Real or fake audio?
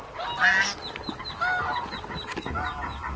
real